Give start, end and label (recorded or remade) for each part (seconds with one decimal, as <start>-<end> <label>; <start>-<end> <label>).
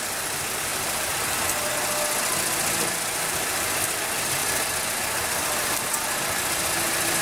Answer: 0.0-0.7 recorded; 0.7-1.7 remade; 1.7-4.4 recorded; 4.4-5.9 remade; 5.9-7.2 recorded